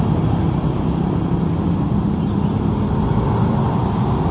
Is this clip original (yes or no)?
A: yes